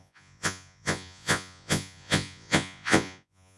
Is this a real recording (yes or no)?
no